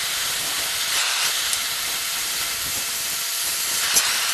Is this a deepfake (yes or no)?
yes